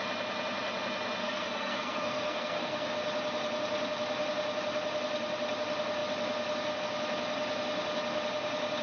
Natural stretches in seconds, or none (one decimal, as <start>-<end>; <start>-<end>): 0.0-1.2; 2.9-8.8